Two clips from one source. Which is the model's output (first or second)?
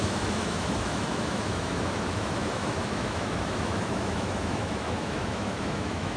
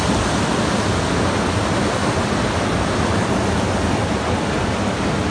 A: first